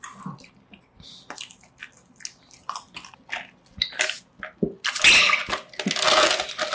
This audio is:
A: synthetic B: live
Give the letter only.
B